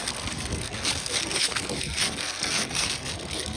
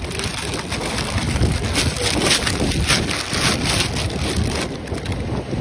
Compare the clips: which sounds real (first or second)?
second